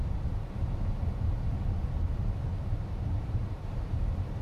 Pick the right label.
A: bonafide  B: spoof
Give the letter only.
A